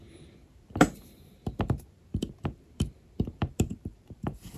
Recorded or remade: remade